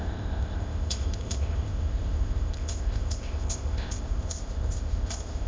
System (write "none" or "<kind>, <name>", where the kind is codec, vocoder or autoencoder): codec, ZipCodec